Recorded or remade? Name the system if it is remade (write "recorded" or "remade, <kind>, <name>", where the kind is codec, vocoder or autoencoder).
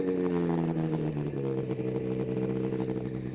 recorded